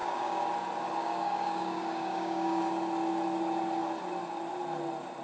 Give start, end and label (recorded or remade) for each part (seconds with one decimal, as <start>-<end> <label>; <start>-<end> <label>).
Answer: 0.0-0.5 remade; 0.5-1.0 recorded; 1.0-2.6 remade; 2.6-5.2 recorded